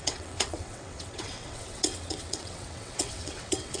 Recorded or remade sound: remade